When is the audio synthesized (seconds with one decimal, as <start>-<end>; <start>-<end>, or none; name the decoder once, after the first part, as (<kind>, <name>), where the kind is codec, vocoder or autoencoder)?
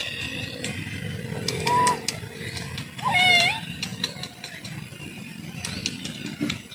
3.2-3.9 (vocoder, BigVGAN v2); 5.0-5.8